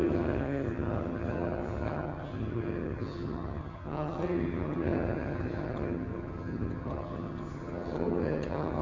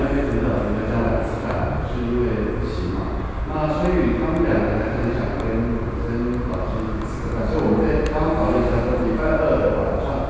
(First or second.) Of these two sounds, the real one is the second